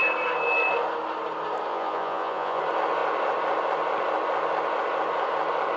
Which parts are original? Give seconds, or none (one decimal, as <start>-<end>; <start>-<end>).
0.0-1.7; 2.6-5.8